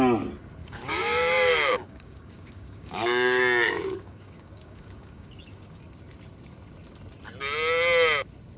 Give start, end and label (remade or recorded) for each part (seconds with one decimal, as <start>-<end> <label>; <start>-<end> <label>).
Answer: 0.0-0.6 recorded; 0.6-5.8 remade; 5.8-8.6 recorded